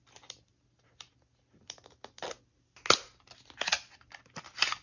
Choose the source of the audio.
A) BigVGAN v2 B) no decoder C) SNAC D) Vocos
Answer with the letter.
B